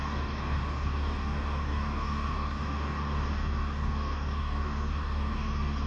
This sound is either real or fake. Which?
fake